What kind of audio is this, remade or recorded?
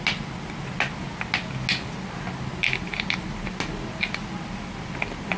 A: recorded